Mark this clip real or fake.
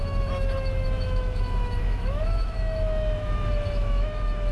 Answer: fake